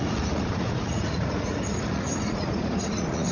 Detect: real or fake fake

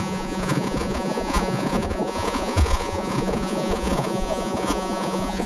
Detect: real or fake fake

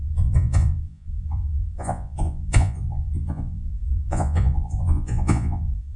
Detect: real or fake fake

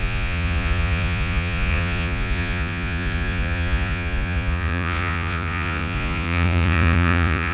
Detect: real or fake fake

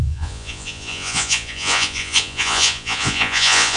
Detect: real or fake fake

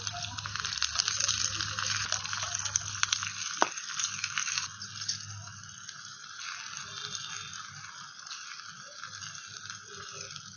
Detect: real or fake real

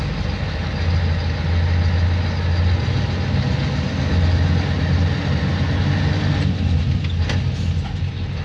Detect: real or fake real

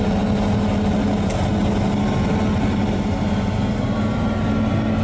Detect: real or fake real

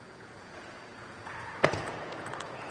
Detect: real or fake fake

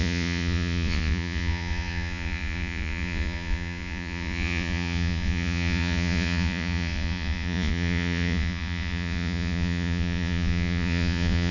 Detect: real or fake fake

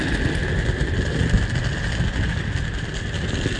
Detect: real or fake real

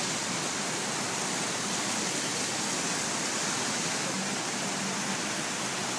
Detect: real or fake real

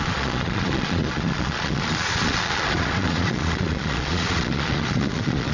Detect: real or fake fake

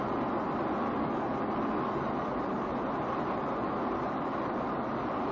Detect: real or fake real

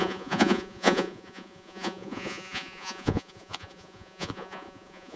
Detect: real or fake fake